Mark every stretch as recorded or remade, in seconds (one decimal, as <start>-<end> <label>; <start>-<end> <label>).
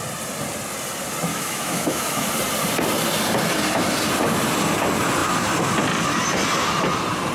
0.0-1.3 recorded; 1.3-2.3 remade; 2.3-7.3 recorded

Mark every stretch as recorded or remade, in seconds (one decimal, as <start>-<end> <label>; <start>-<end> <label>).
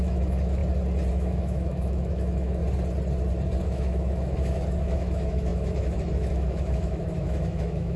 0.0-0.6 remade; 0.6-1.1 recorded; 1.1-2.6 remade; 2.6-3.6 recorded; 3.6-8.0 remade